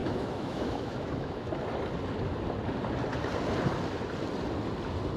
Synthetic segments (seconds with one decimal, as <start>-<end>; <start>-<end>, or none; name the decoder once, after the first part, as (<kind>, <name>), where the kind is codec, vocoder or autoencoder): 0.0-1.5 (autoencoder, DAC-VAE)